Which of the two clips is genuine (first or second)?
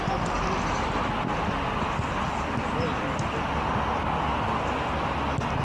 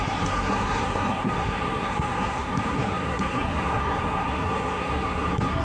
first